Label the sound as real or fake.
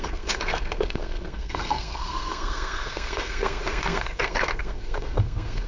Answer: fake